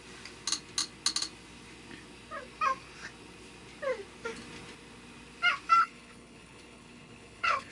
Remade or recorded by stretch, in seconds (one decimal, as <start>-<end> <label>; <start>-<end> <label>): 0.0-5.8 recorded; 5.8-7.7 remade